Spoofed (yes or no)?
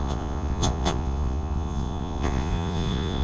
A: yes